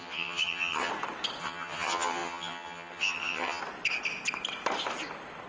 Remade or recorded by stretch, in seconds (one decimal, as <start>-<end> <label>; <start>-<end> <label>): 0.0-0.9 remade; 0.9-1.4 recorded; 1.4-3.6 remade; 3.6-5.5 recorded